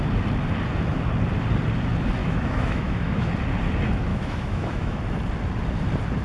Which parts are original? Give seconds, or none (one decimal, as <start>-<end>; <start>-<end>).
0.0-2.2; 3.3-4.1; 5.0-6.2